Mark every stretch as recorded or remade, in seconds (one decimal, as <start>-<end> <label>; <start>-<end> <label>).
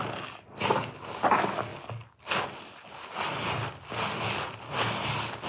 0.0-5.5 recorded